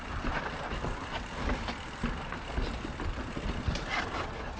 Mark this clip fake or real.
real